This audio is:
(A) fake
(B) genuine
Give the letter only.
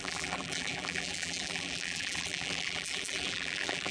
A